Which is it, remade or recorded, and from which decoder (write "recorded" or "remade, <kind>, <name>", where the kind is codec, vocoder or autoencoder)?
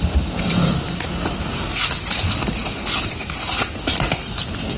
recorded